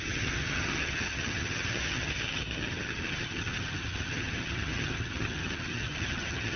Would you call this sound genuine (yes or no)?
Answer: no